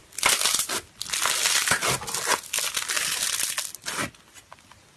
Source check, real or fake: real